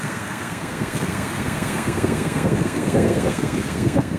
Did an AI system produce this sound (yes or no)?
yes